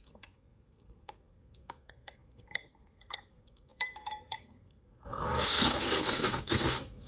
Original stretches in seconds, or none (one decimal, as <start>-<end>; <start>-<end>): none